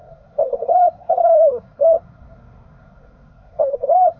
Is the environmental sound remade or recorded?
remade